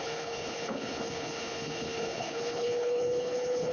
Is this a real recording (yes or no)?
no